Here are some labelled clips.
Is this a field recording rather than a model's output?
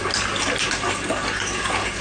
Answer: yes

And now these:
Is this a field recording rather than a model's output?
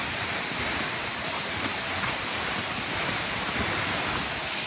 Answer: yes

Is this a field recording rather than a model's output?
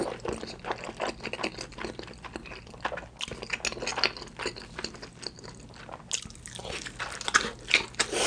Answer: yes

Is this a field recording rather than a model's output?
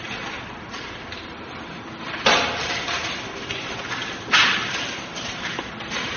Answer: yes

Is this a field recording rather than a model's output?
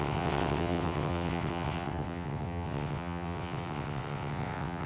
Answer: no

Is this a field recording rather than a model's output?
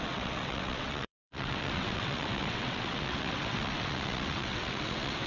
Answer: no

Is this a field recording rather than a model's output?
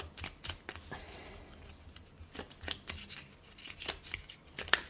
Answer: yes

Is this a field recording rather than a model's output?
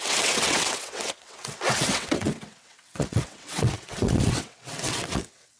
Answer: no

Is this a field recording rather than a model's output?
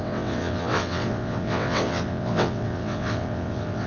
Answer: no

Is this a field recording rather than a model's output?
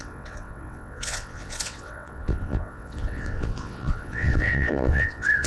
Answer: no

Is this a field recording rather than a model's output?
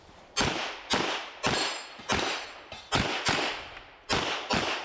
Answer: yes